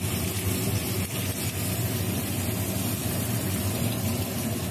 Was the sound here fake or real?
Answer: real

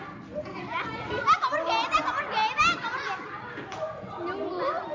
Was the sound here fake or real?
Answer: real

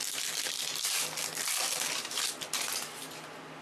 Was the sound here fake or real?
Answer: real